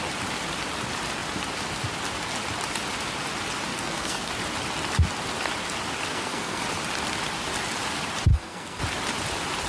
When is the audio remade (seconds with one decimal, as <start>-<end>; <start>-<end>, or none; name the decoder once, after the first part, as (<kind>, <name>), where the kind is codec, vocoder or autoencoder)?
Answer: 3.7-4.3 (codec, SNAC); 6.1-6.6; 8.3-8.8